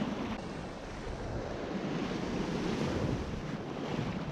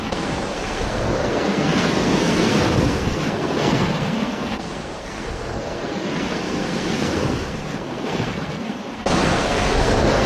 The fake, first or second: second